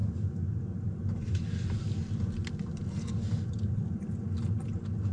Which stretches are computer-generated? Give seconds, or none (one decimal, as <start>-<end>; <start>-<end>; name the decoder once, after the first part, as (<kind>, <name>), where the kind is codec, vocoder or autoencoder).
none